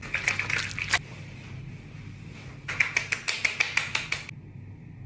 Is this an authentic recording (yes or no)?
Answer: yes